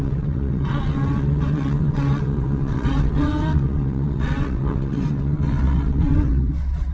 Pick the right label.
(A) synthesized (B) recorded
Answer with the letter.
A